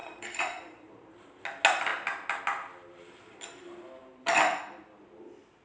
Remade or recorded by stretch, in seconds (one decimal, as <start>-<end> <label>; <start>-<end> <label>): 0.0-1.4 remade; 1.4-4.0 recorded; 4.0-4.6 remade; 4.6-5.6 recorded